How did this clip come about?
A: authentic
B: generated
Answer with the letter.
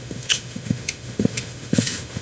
B